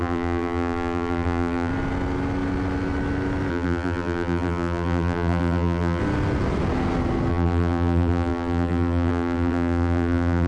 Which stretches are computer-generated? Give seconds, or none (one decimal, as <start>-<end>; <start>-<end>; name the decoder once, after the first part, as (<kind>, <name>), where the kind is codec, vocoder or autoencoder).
0.0-1.7 (vocoder, BigVGAN v2); 3.5-6.0; 7.3-10.5